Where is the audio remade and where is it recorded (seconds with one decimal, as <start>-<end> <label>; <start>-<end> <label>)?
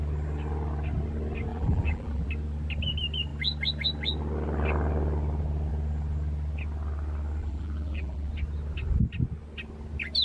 0.0-1.5 recorded; 1.5-2.3 remade; 2.3-7.4 recorded; 7.4-8.3 remade; 8.3-10.2 recorded